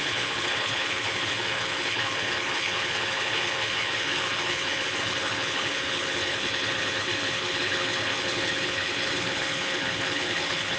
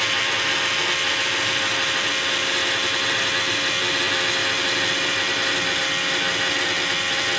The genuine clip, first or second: second